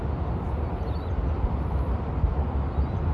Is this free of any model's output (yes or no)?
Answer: yes